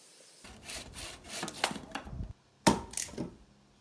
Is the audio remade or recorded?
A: recorded